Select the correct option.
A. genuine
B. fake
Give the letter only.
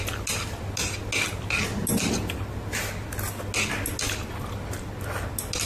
A